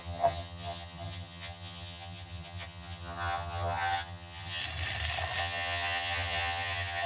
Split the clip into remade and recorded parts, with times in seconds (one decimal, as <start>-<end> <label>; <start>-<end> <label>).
0.0-4.6 remade; 4.6-5.4 recorded; 5.4-7.1 remade